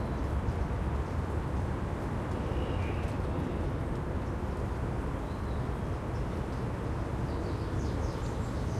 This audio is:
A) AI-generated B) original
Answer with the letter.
B